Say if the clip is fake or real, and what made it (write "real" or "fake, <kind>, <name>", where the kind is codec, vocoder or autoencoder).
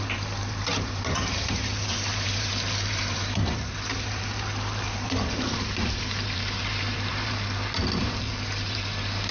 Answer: fake, vocoder, BigVGAN v2